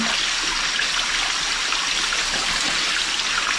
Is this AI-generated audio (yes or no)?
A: no